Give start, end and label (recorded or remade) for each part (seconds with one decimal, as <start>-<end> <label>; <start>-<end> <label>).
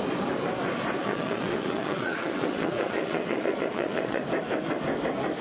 0.0-1.0 recorded; 1.0-4.2 remade; 4.2-5.4 recorded